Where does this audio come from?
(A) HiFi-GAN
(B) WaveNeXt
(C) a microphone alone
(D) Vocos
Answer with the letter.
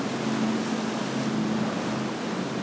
C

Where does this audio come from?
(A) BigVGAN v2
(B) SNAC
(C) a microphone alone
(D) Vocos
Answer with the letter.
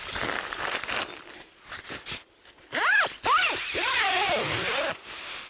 C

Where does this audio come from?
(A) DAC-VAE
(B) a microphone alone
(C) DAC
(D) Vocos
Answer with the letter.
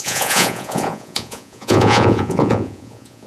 D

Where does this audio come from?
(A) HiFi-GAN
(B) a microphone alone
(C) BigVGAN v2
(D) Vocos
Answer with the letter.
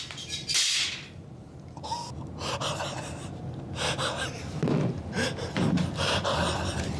B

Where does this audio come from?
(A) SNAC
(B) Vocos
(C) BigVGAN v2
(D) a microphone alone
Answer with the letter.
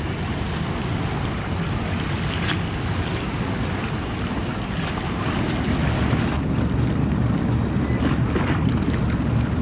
D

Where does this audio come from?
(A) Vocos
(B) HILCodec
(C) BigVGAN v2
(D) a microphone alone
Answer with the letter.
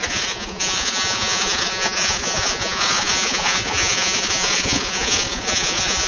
A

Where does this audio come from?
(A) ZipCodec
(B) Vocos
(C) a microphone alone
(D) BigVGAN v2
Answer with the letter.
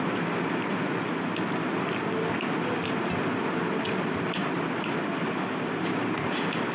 C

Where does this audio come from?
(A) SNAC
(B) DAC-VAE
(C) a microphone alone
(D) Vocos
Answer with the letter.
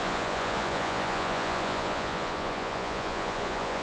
D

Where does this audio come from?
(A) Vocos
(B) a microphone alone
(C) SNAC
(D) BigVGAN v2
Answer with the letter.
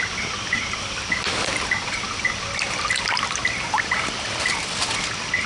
B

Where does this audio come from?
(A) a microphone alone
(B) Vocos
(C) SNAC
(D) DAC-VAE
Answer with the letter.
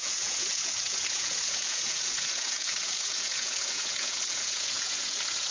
B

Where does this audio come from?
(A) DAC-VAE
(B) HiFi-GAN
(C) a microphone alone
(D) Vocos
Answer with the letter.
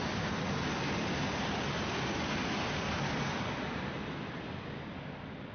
C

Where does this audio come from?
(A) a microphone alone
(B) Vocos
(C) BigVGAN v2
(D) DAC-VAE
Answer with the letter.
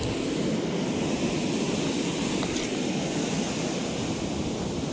A